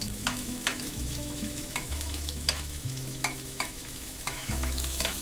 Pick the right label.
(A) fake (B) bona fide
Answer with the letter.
A